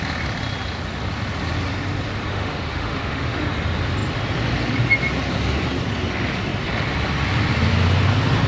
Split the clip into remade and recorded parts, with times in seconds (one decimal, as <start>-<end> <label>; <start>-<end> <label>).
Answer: 0.0-2.3 recorded; 2.3-3.4 remade; 3.4-8.5 recorded